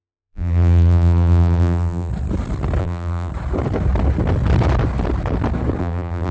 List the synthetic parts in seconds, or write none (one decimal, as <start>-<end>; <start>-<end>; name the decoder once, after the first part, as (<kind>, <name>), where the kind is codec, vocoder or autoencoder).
0.0-2.1 (vocoder, BigVGAN v2); 2.8-3.3; 5.8-6.3